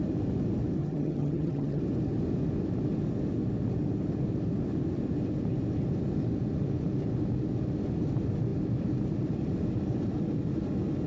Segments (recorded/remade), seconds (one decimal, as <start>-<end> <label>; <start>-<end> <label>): 0.0-0.8 recorded; 0.8-1.8 remade; 1.8-11.1 recorded